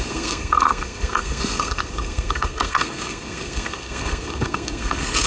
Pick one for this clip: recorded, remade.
remade